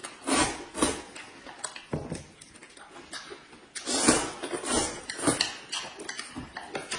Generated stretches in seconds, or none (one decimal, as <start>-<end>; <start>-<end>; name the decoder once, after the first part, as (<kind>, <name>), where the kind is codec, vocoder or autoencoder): none